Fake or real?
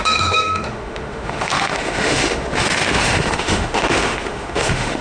fake